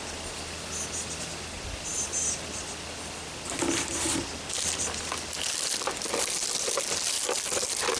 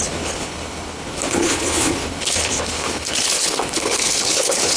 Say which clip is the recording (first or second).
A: first